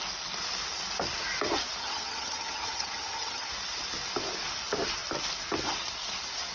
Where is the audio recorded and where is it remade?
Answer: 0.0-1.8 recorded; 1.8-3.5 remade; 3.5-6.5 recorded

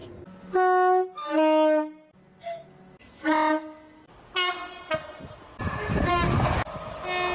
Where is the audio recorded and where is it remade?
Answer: 0.0-7.3 recorded

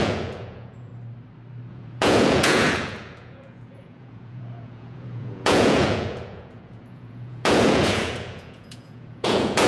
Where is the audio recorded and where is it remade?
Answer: 0.0-0.9 remade; 0.9-1.7 recorded; 1.7-9.7 remade